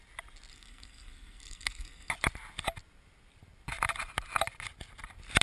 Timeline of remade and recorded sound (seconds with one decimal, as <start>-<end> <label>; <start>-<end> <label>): 0.0-0.5 recorded; 0.5-2.1 remade; 2.1-5.4 recorded